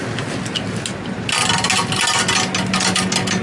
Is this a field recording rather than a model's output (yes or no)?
yes